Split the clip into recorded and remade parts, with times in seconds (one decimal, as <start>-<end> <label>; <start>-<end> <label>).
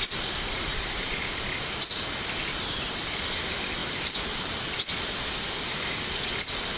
0.0-0.7 recorded; 0.7-1.6 remade; 1.6-3.8 recorded; 3.8-4.7 remade; 4.7-6.8 recorded